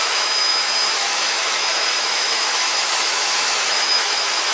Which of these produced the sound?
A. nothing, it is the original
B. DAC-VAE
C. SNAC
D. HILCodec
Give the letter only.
B